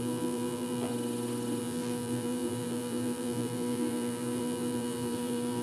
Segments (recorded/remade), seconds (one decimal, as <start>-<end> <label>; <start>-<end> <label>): 0.0-0.9 remade; 0.9-1.6 recorded; 1.6-5.6 remade

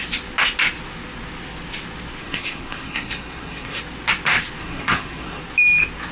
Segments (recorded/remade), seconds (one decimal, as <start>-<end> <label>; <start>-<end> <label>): 0.0-2.2 recorded; 2.2-3.8 remade; 3.8-4.6 recorded; 4.6-5.4 remade; 5.4-6.1 recorded

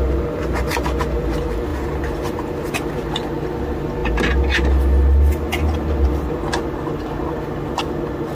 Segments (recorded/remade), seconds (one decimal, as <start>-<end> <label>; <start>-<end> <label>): 0.0-8.3 recorded

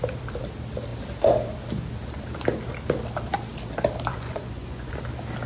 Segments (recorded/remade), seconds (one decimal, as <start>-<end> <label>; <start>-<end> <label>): 0.0-4.1 recorded; 4.1-4.9 remade; 4.9-5.5 recorded

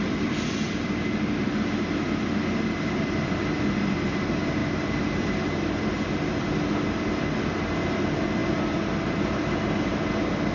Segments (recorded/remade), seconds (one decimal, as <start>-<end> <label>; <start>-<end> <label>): 0.0-10.5 recorded